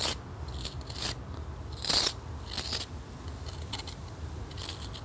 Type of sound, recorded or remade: recorded